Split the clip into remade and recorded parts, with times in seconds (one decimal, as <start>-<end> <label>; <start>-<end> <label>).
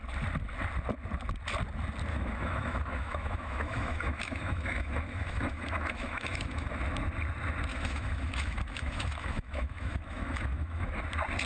0.0-2.1 recorded; 2.1-6.8 remade; 6.8-7.7 recorded; 7.7-11.0 remade; 11.0-11.5 recorded